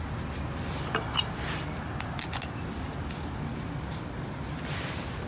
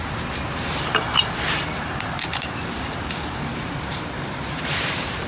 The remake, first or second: second